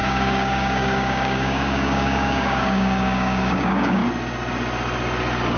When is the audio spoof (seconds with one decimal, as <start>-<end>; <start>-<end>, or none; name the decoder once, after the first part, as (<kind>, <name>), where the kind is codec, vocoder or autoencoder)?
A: 0.0-4.0 (codec, DAC)